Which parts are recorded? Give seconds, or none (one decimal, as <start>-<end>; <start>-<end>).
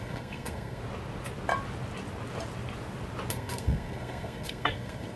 0.8-3.3